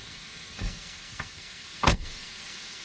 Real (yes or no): no